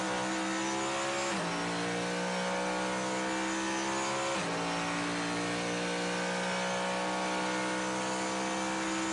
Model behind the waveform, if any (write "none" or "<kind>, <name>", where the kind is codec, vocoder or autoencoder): none